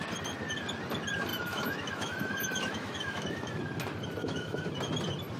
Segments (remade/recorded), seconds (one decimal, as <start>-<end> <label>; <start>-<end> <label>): 0.0-1.3 recorded; 1.3-3.5 remade; 3.5-4.2 recorded; 4.2-4.7 remade; 4.7-5.4 recorded